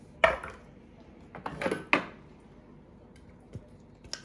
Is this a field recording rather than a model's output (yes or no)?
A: yes